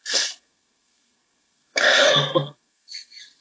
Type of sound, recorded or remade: remade